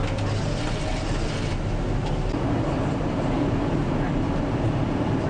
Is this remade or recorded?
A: recorded